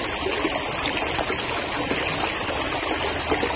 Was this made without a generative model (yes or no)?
yes